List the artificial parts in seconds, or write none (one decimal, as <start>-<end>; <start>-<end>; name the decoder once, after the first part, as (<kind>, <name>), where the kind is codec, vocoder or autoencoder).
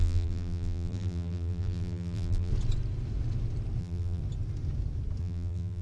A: 0.0-2.5 (vocoder, BigVGAN v2); 3.8-4.2; 5.2-5.8